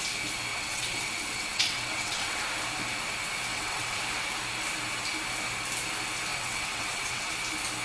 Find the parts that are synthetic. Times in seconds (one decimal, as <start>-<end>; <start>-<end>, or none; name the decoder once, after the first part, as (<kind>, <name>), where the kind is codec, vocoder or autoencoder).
0.5-2.4 (vocoder, WaveNeXt); 3.5-4.0; 6.3-7.3